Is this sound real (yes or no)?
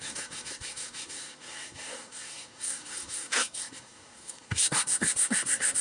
no